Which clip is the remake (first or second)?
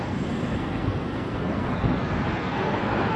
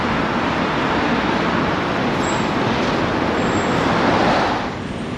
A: first